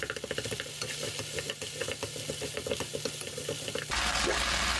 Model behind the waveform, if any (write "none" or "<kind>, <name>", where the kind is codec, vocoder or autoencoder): none